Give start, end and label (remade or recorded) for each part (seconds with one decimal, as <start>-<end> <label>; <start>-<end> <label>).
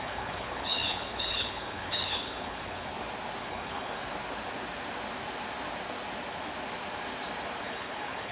0.0-2.9 remade; 2.9-3.4 recorded; 3.4-4.0 remade; 4.0-7.6 recorded; 7.6-8.3 remade